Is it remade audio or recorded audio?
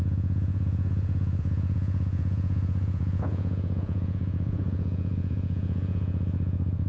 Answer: remade